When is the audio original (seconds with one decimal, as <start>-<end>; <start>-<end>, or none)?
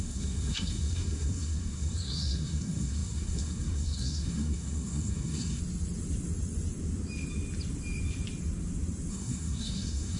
5.6-9.1